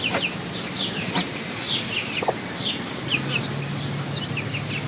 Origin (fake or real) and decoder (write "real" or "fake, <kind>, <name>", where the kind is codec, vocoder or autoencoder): real